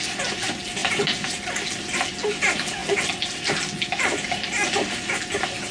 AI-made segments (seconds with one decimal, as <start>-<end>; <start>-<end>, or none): none